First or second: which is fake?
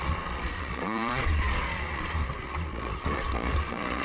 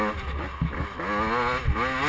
first